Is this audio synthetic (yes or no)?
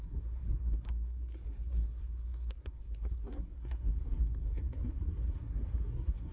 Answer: yes